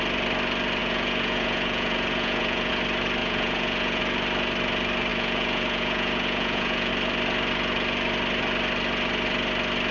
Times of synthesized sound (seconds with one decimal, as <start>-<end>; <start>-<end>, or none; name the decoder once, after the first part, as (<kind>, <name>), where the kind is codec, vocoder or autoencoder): 0.8-2.7 (vocoder, Vocos); 3.2-4.0; 5.1-6.9